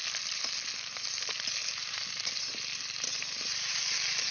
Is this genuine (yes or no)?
yes